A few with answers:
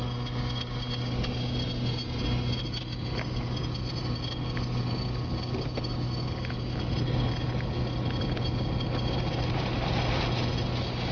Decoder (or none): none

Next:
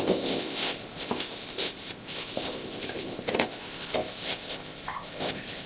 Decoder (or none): codec, ZipCodec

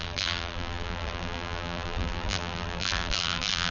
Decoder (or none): vocoder, BigVGAN v2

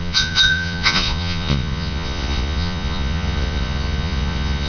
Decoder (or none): vocoder, Vocos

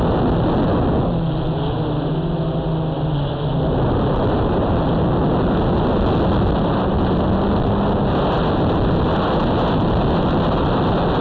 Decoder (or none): none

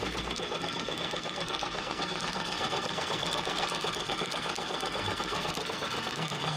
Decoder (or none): codec, SNAC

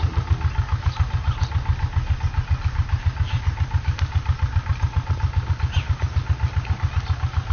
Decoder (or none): none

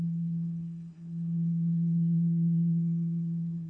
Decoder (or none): codec, SNAC